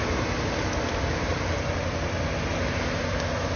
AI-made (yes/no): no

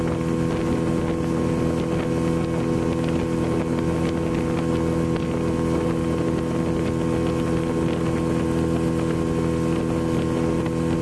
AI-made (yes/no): no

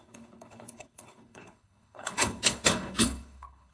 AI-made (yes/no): yes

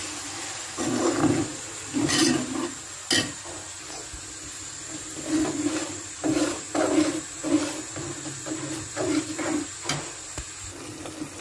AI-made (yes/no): no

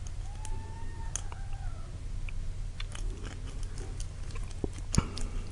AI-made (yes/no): no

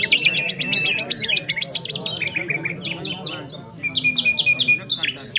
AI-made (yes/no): no